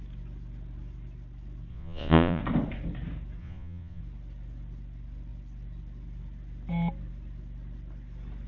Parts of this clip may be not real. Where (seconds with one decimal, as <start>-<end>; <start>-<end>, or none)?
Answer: 1.7-2.4; 3.4-4.0